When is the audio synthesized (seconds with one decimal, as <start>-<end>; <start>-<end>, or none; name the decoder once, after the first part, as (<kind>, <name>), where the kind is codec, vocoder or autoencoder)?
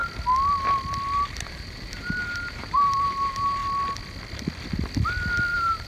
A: 1.4-3.6 (vocoder, BigVGAN v2); 5.5-5.9